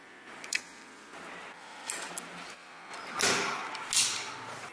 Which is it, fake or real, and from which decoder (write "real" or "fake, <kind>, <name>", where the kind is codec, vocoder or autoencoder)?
real